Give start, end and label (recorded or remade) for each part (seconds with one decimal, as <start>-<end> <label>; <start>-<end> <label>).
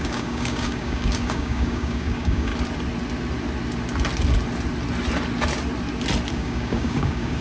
0.0-2.5 remade; 2.5-6.3 recorded; 6.3-7.4 remade